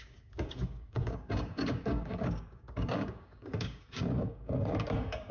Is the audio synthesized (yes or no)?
yes